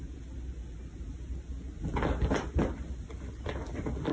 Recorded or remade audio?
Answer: recorded